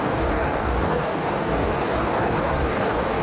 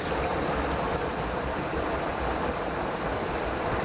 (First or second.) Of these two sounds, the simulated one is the first